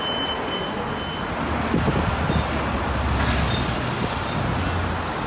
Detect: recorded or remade recorded